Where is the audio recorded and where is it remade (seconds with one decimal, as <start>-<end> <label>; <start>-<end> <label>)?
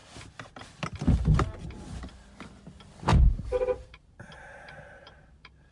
0.0-3.1 recorded; 3.1-5.7 remade